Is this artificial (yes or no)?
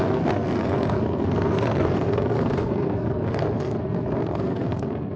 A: yes